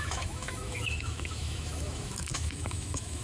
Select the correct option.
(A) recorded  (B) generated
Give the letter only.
B